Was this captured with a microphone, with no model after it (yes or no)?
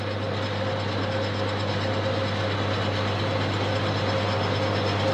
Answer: yes